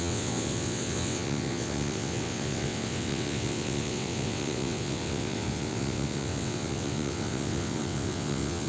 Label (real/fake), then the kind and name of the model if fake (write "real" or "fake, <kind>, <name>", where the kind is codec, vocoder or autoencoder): fake, vocoder, WaveNeXt